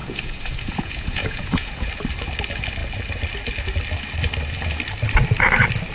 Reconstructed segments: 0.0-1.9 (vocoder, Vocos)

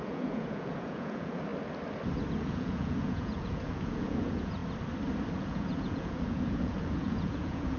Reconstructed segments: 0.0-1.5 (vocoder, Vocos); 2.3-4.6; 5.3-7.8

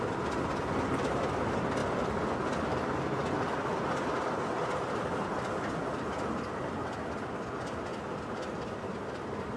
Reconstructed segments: none

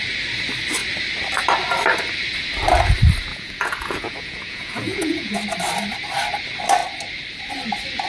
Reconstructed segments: 3.3-5.4 (vocoder, Vocos)

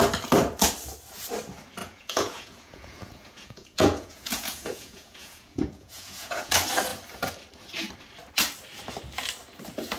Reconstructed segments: 1.8-6.5 (vocoder, Vocos)

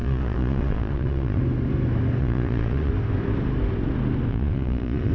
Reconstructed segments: 0.0-1.4 (vocoder, Vocos); 2.2-2.9; 4.3-5.1